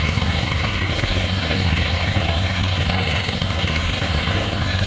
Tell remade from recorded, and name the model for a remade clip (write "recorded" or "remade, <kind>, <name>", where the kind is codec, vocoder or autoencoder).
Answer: remade, codec, SNAC